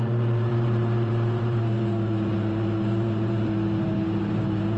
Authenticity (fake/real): fake